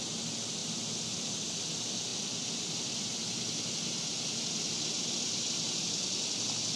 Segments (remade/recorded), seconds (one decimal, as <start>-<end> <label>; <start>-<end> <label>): 0.0-6.8 recorded